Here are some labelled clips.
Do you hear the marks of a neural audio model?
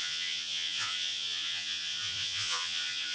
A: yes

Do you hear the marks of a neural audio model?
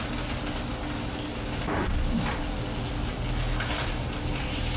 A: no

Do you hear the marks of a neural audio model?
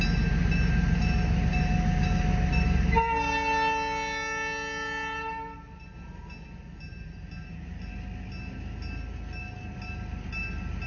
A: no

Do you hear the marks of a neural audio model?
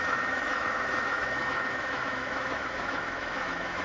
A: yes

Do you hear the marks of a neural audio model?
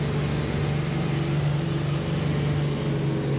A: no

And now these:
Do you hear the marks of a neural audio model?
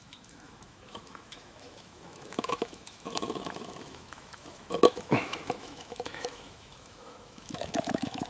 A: yes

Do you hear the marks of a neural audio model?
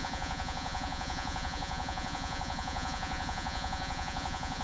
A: yes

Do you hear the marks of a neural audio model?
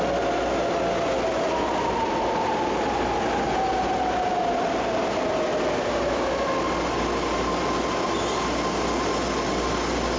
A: no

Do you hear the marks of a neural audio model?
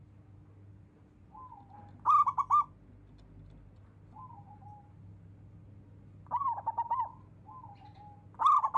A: no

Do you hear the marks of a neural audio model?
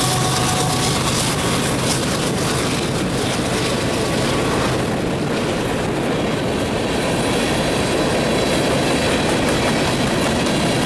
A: no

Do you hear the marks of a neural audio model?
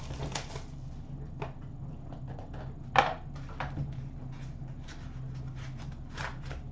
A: no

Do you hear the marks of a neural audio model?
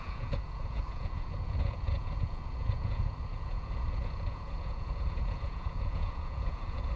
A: yes